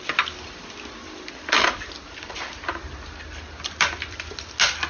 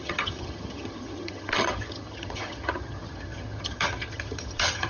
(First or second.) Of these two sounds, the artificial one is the second